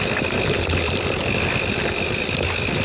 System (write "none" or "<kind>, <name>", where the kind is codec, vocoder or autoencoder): none